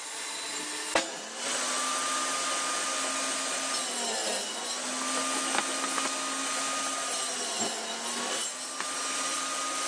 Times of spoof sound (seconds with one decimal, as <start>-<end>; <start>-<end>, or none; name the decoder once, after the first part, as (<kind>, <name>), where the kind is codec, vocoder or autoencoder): none